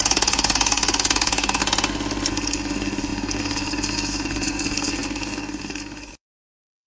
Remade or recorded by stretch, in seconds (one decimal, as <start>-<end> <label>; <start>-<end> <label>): 0.0-1.6 remade; 1.6-2.3 recorded; 2.3-6.9 remade